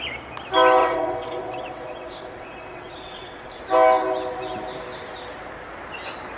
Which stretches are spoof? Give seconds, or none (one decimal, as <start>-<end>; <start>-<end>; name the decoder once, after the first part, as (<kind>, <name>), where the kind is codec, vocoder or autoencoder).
0.8-3.6 (vocoder, WaveNeXt)